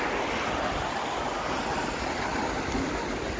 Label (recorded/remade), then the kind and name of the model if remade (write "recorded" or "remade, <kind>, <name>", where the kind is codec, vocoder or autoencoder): recorded